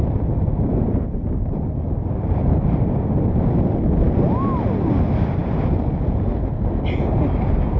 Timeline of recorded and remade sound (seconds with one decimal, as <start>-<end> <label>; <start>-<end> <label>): 0.0-7.8 recorded